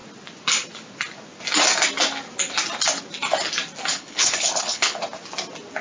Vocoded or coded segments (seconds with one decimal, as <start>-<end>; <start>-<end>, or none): 3.9-5.0